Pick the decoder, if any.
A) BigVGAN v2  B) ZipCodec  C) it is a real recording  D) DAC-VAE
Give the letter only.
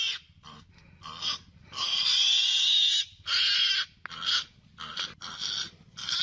C